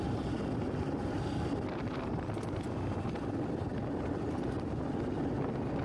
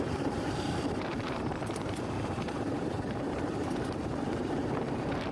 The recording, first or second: first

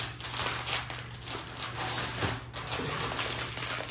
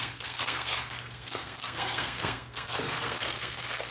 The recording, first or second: first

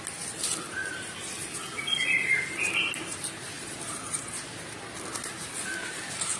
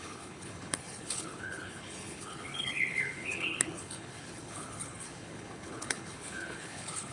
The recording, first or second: first